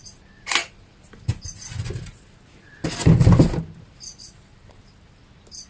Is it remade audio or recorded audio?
recorded